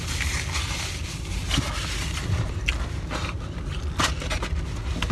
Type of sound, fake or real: real